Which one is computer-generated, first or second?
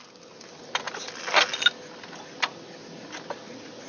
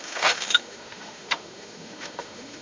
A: second